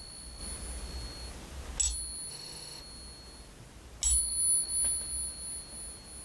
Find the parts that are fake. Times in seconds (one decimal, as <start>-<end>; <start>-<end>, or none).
2.3-2.8